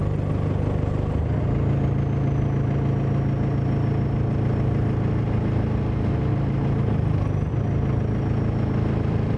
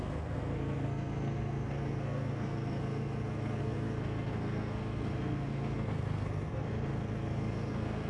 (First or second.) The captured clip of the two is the first